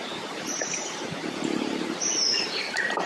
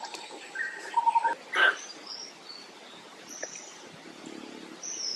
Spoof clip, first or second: first